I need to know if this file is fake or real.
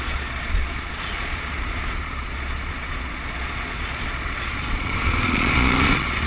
fake